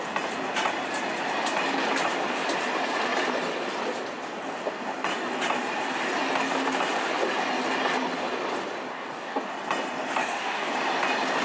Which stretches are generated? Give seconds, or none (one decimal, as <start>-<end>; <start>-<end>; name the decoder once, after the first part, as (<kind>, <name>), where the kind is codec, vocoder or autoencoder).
8.9-9.5 (codec, DAC); 10.2-10.7